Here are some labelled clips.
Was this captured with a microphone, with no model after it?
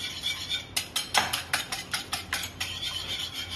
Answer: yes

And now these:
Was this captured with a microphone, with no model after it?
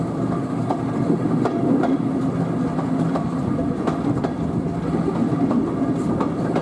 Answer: yes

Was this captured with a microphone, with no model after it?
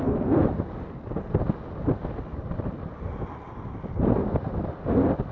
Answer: yes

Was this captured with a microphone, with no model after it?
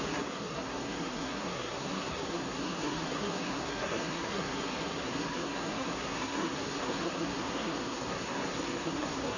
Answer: no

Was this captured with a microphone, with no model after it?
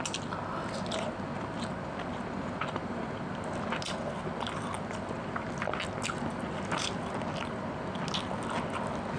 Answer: yes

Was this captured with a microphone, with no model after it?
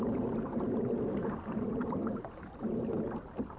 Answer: no